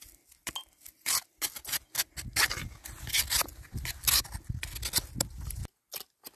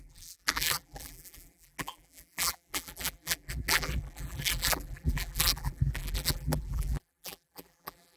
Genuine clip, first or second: first